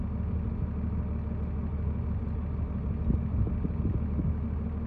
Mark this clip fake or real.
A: real